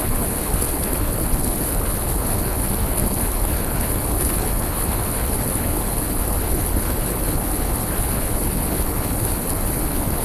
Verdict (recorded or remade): remade